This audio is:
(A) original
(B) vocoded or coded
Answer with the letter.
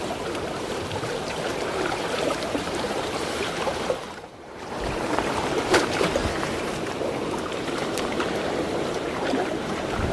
B